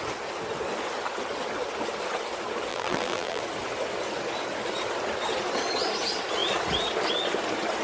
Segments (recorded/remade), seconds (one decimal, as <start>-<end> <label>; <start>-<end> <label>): 0.0-2.7 recorded; 2.7-3.4 remade; 3.4-7.8 recorded